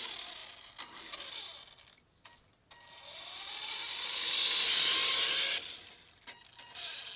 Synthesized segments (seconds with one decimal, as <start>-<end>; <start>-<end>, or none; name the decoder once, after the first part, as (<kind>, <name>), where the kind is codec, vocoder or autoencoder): none